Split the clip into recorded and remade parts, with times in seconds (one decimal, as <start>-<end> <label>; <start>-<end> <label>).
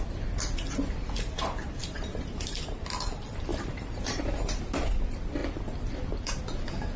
0.0-1.8 recorded; 1.8-2.8 remade; 2.8-3.5 recorded; 3.5-4.6 remade; 4.6-7.0 recorded